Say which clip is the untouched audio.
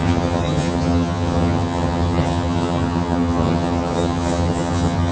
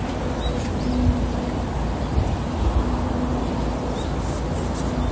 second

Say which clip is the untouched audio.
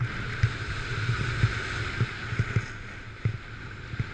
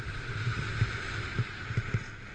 first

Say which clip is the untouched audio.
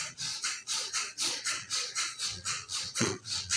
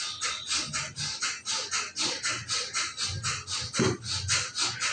second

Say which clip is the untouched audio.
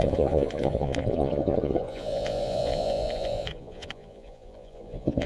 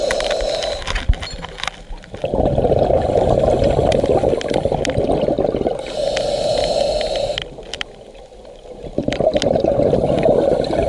second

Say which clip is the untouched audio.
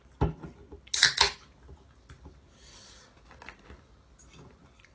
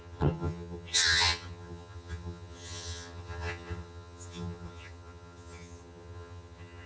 first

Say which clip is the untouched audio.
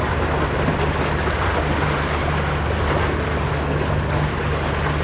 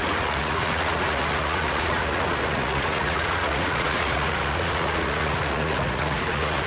first